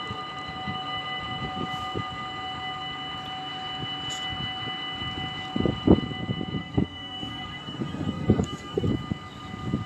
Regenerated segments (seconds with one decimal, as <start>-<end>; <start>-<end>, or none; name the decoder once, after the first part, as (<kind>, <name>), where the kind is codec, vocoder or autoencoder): 6.6-8.9 (codec, SNAC)